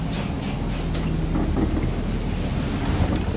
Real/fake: real